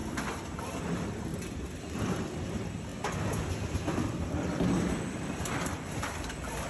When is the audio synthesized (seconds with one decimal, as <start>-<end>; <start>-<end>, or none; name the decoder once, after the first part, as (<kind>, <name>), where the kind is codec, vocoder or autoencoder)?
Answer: 0.6-2.9 (vocoder, BigVGAN v2); 4.0-6.7